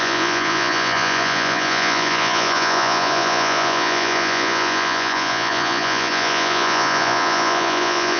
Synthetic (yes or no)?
yes